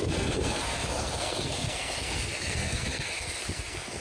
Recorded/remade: remade